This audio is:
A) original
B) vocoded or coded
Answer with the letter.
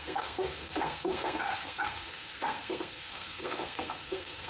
B